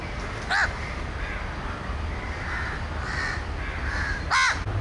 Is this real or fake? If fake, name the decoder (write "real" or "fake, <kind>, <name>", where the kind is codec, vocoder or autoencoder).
real